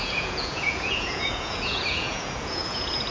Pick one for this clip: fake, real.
fake